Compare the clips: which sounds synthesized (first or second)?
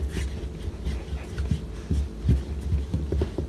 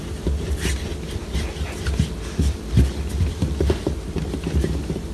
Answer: second